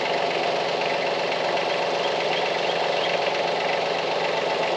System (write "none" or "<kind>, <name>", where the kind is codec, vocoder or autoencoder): none